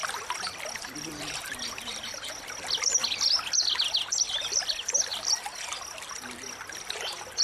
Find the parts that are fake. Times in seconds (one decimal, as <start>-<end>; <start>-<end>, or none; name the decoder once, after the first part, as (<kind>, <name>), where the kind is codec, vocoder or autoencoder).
0.0-2.3 (vocoder, BigVGAN v2)